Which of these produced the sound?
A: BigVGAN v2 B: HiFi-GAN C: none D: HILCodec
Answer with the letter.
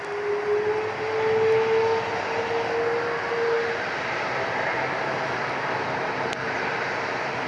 C